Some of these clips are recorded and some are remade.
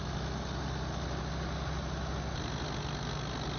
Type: recorded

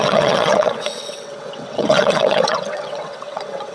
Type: remade